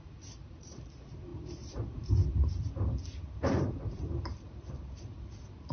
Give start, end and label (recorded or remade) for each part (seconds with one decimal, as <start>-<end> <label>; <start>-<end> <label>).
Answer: 0.0-5.7 remade